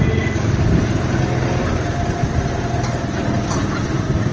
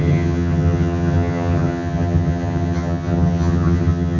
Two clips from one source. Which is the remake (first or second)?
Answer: second